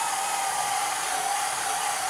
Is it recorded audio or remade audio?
recorded